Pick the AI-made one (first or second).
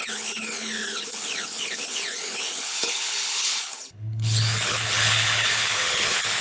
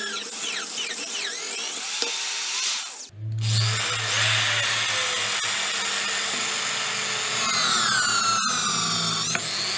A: first